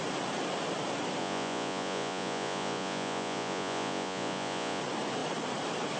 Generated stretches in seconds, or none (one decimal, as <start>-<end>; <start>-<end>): 1.2-4.8